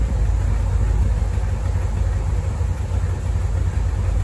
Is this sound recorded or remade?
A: recorded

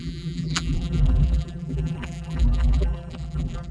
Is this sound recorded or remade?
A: remade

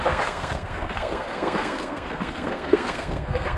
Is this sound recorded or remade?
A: remade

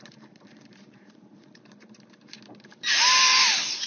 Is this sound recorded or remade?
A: remade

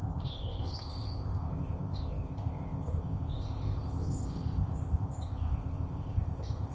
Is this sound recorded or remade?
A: remade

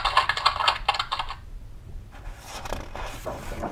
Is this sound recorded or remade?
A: recorded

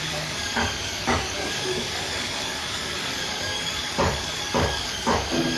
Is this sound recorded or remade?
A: remade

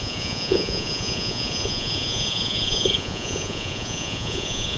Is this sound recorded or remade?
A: remade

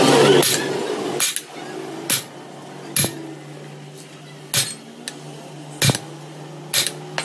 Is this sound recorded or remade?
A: recorded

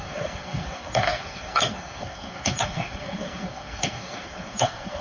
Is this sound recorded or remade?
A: remade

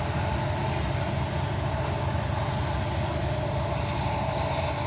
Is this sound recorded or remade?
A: recorded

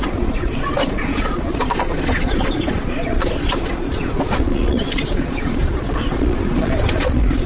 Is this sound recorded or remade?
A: remade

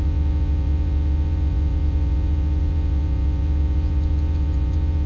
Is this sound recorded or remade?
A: remade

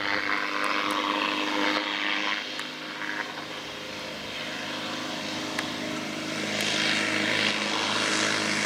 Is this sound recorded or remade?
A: recorded